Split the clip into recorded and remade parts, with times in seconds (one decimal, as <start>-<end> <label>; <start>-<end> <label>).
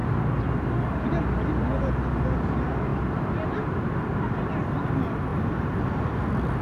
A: 0.0-6.6 recorded